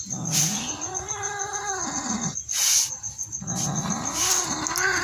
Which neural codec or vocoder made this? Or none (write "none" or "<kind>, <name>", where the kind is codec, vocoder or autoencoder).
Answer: none